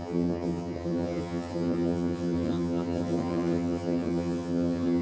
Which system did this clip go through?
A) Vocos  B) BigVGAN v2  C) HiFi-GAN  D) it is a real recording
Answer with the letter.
C